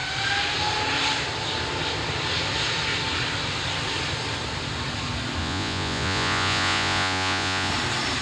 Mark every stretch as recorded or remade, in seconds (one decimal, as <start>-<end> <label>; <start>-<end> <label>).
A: 0.0-5.4 recorded; 5.4-7.7 remade; 7.7-8.2 recorded